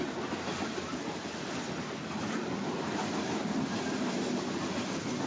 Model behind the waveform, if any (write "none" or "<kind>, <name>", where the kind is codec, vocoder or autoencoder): none